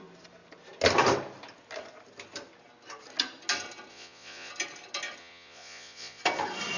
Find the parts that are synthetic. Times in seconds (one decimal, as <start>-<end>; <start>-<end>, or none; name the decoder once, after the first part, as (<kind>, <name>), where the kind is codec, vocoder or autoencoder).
3.9-4.5 (vocoder, Vocos); 5.2-6.2